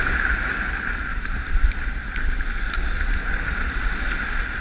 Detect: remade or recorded recorded